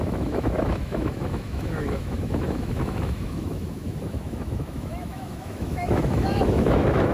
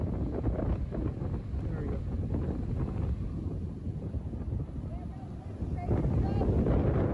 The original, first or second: second